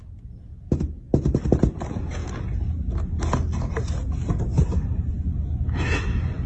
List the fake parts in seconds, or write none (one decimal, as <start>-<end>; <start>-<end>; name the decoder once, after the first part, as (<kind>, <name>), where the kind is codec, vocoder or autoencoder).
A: none